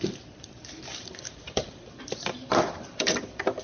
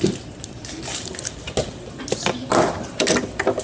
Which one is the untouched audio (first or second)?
second